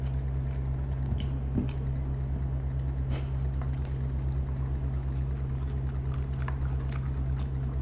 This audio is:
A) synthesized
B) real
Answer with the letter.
B